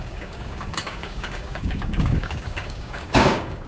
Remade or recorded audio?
remade